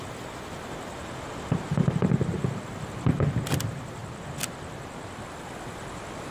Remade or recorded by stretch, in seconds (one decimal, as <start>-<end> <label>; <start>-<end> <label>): 0.0-6.3 recorded